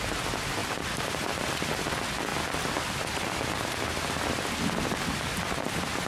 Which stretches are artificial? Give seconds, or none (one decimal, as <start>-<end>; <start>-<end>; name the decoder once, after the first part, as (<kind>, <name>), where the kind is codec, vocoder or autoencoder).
0.6-1.5 (vocoder, BigVGAN v2); 2.3-5.2